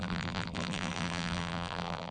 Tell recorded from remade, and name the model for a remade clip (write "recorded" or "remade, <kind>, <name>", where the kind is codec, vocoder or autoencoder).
remade, vocoder, BigVGAN v2